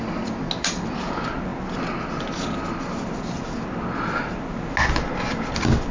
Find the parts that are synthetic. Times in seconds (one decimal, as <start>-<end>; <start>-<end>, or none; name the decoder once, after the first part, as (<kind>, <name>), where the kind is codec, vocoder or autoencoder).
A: none